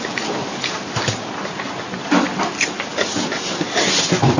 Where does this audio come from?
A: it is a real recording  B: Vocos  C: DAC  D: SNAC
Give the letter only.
A